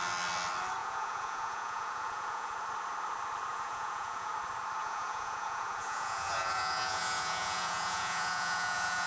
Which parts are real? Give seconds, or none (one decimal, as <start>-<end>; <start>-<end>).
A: 0.0-0.8; 2.5-3.5; 4.3-4.8